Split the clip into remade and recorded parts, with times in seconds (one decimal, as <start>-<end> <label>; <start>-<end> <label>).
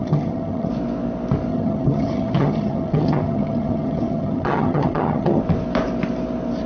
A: 0.0-0.7 remade; 0.7-1.5 recorded; 1.5-5.4 remade; 5.4-6.7 recorded